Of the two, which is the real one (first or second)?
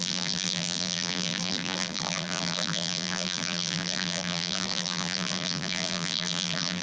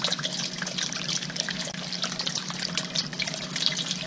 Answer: second